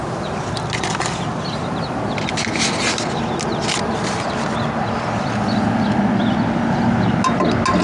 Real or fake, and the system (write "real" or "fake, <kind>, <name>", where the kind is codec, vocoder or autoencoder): real